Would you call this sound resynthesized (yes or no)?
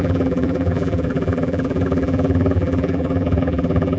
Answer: yes